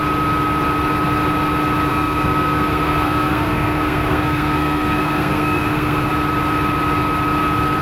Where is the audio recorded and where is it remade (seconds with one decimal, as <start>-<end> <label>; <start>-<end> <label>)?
0.0-1.9 recorded; 1.9-6.1 remade; 6.1-7.8 recorded